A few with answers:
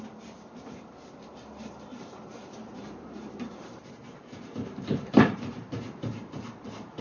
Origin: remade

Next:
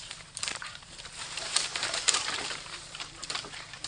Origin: remade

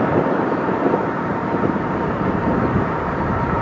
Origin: remade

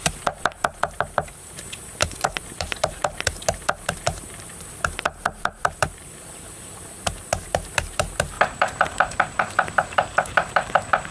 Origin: remade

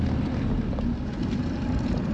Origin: recorded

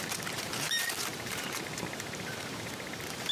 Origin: remade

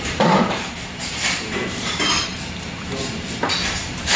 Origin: remade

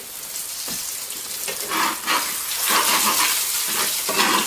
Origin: recorded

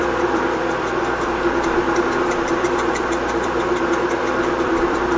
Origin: remade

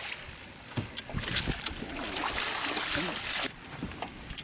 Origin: remade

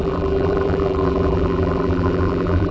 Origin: remade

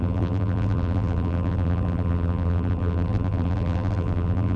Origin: remade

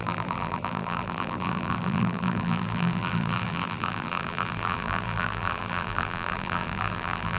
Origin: remade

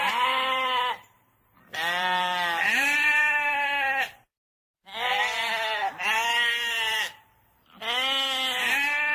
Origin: remade